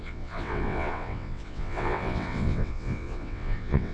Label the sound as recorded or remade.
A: remade